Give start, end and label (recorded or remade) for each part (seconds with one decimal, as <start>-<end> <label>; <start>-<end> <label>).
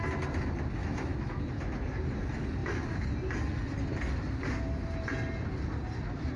0.0-0.8 recorded; 0.8-1.4 remade; 1.4-6.4 recorded